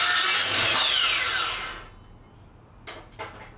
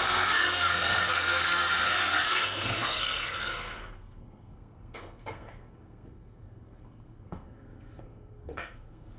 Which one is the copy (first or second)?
second